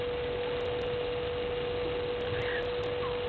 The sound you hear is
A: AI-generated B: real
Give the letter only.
B